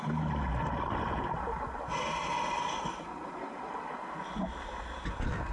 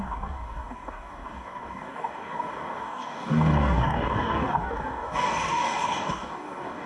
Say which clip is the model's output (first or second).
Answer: second